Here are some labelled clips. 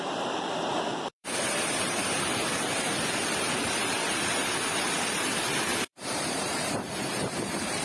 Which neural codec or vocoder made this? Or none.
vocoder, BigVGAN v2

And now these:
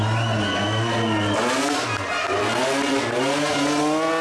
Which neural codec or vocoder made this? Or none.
none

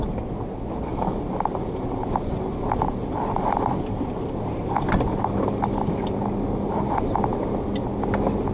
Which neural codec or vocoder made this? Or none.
none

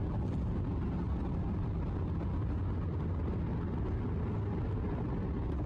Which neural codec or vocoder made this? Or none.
none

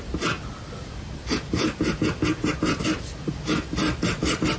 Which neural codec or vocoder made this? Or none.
none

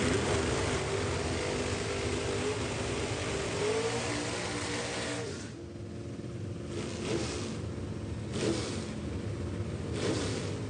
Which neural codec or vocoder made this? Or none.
none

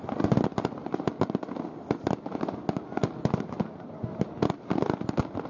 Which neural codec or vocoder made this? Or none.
none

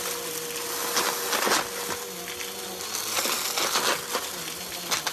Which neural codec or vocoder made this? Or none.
none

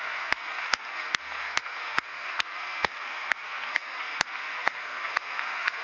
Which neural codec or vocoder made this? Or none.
codec, SNAC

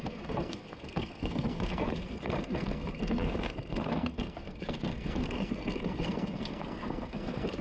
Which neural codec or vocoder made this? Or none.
codec, SNAC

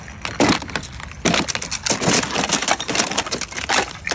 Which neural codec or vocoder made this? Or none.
none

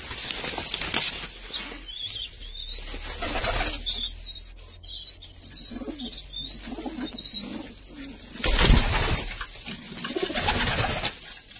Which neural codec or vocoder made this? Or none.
none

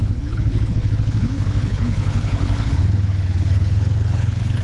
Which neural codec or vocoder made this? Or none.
codec, HILCodec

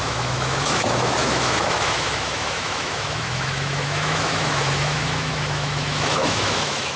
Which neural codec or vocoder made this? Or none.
autoencoder, DAC-VAE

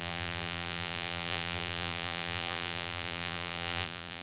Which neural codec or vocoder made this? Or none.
vocoder, BigVGAN v2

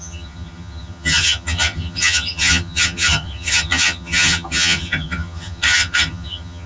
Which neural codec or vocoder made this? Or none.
vocoder, HiFi-GAN